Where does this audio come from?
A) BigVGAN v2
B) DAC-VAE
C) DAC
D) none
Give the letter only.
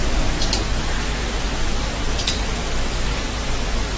D